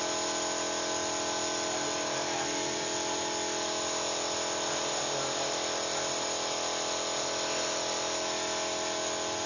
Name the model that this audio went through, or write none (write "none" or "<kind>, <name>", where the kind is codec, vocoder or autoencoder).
none